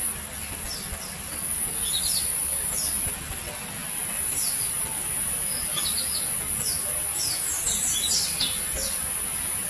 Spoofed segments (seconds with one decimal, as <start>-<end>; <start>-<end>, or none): none